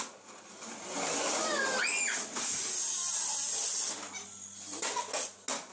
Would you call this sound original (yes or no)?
yes